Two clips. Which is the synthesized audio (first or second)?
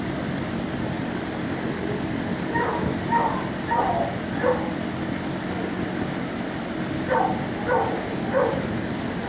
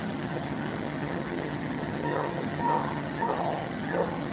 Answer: second